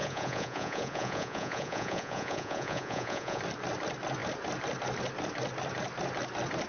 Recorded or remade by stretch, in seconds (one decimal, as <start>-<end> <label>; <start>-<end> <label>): 0.0-3.4 remade; 3.4-6.7 recorded